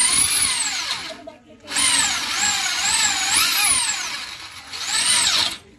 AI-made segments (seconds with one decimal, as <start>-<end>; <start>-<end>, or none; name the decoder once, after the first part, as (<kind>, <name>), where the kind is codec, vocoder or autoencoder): 1.1-3.5 (vocoder, Vocos); 4.5-5.8